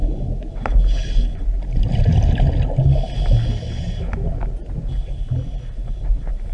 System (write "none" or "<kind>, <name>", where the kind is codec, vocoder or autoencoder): none